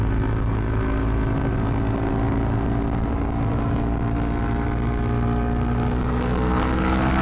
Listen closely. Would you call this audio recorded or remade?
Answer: recorded